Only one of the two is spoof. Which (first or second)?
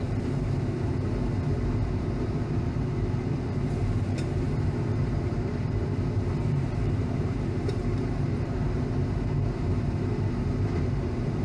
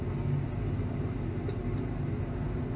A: first